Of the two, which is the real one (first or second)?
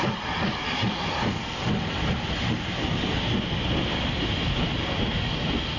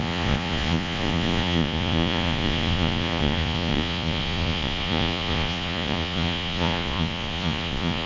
first